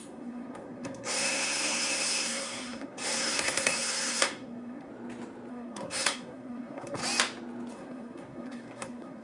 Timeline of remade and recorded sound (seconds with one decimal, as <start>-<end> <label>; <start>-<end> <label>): 0.0-4.9 remade; 4.9-5.5 recorded; 5.5-7.0 remade; 7.0-7.7 recorded; 7.7-9.2 remade